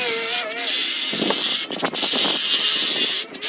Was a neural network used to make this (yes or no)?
no